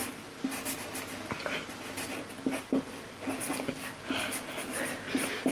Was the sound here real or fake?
real